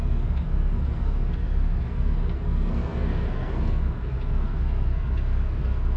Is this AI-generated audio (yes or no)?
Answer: yes